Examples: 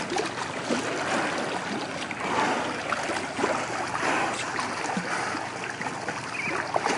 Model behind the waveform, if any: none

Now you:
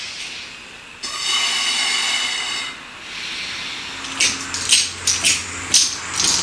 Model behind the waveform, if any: none